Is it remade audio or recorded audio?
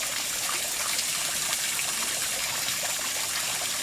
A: recorded